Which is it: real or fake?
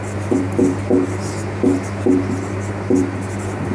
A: real